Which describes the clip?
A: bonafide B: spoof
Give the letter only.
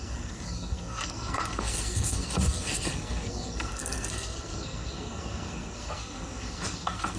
B